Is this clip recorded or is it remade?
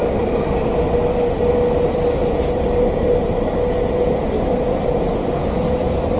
recorded